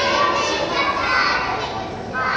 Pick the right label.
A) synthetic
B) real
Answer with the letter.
B